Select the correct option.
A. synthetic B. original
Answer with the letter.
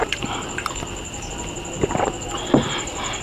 B